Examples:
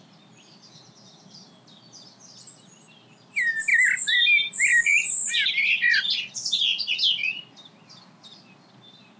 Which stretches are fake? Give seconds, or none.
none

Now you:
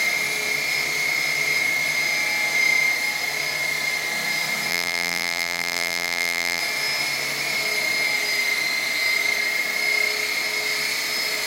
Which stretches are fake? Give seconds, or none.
4.7-6.6 (vocoder, BigVGAN v2)